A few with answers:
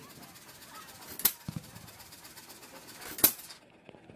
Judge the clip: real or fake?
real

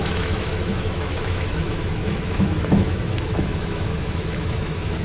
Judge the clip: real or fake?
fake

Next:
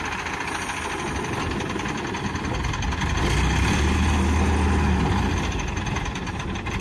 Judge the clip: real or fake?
real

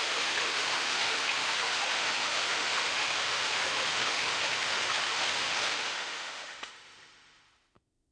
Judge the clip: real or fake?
fake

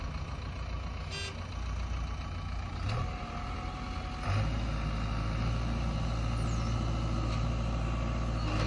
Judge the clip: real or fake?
real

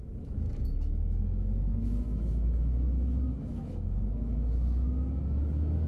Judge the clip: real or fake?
fake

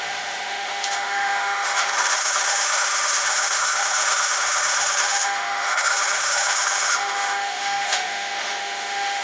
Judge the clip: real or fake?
fake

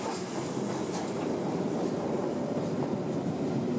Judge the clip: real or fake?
real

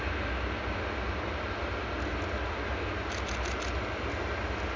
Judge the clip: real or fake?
real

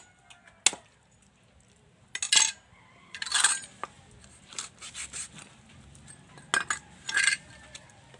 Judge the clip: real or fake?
real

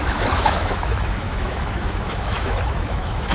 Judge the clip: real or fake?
fake